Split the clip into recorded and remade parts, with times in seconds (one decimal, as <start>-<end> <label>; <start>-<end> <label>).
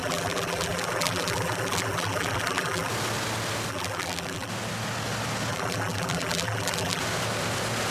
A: 0.0-2.9 remade; 2.9-3.7 recorded; 3.7-4.5 remade; 4.5-5.5 recorded; 5.5-7.0 remade; 7.0-7.9 recorded